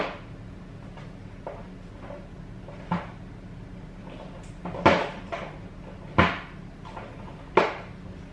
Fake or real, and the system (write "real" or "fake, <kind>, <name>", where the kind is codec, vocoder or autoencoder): real